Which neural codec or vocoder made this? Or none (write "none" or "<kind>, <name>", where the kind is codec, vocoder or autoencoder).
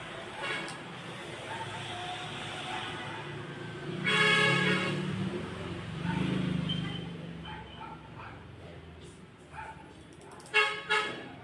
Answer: none